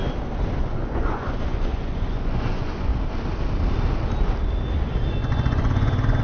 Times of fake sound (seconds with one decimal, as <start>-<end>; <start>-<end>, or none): 0.6-2.9; 5.1-6.2